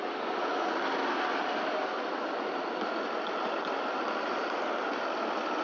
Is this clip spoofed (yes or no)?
no